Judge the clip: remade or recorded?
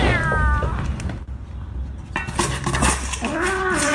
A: recorded